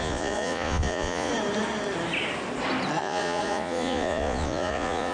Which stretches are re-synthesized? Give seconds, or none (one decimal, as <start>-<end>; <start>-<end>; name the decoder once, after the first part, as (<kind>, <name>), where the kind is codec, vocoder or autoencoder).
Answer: 0.0-1.3 (vocoder, Vocos); 3.0-5.1